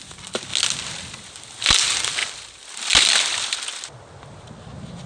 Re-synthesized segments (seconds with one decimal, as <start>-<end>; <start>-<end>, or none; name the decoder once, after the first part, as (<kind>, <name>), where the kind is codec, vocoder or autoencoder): none